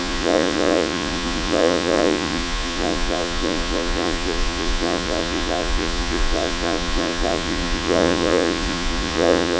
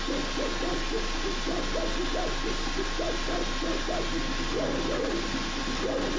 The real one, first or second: second